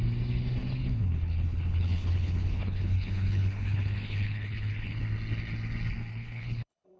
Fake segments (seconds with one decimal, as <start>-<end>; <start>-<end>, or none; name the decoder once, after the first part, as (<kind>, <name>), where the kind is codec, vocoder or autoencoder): 0.8-5.0 (codec, HILCodec); 6.1-7.0